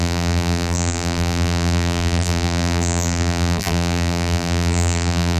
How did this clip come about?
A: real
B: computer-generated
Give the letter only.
B